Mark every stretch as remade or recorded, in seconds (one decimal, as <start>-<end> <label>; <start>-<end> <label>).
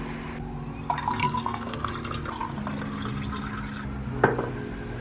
0.0-1.2 recorded; 1.2-1.9 remade; 1.9-5.0 recorded